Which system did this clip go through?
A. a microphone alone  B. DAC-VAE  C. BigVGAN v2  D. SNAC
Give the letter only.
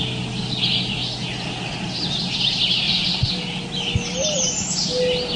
A